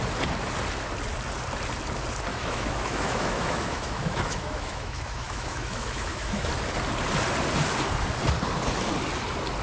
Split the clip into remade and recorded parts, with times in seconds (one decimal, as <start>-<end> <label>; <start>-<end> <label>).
0.0-2.3 recorded; 2.3-6.5 remade; 6.5-9.6 recorded